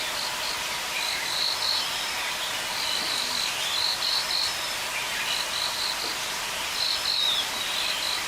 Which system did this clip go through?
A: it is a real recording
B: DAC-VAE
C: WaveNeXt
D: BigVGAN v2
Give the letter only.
A